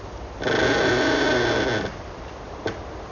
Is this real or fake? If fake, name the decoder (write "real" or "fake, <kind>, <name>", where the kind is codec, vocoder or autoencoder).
real